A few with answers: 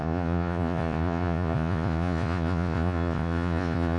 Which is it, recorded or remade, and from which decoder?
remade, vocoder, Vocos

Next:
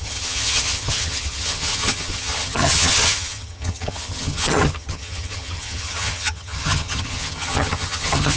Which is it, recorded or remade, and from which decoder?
remade, vocoder, HiFi-GAN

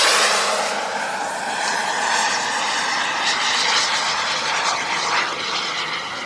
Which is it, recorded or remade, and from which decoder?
remade, vocoder, BigVGAN v2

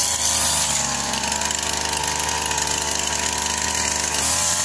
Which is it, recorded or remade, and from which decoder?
recorded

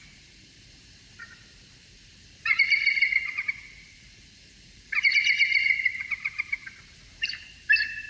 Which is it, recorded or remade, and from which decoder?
remade, vocoder, BigVGAN v2